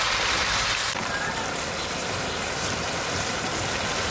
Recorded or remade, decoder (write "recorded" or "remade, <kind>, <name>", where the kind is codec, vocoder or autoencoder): remade, vocoder, BigVGAN v2